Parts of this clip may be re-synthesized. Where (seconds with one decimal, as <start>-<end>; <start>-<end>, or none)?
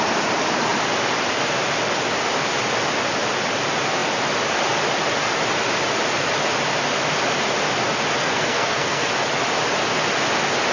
8.2-9.1